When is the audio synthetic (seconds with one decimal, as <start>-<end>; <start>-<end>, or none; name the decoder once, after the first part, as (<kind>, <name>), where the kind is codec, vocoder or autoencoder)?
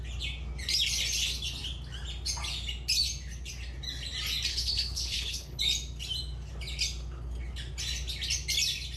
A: 4.5-5.6 (codec, HILCodec)